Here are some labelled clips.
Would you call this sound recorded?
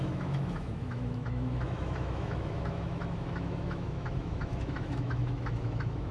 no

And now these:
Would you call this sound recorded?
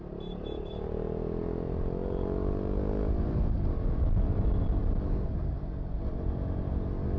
yes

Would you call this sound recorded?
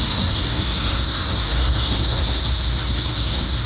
no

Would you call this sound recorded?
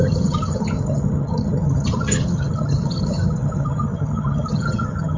no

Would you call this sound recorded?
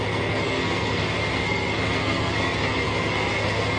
no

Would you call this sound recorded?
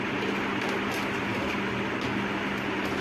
yes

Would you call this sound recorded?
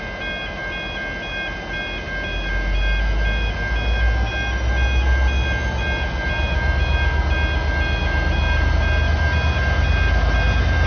yes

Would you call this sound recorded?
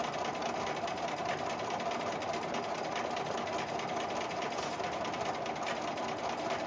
yes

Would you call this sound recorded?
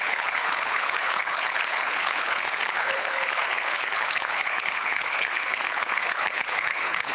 no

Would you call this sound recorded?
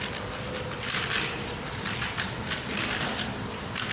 no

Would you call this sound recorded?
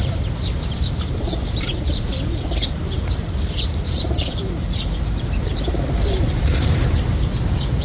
no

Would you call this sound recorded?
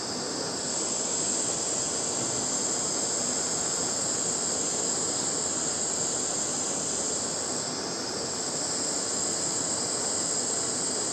yes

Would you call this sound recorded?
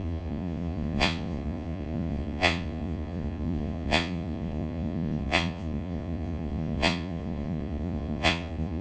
no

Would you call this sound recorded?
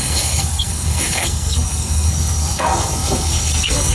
no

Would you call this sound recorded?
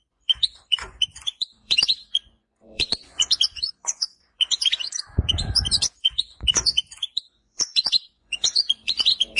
no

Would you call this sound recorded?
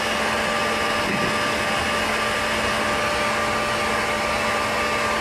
yes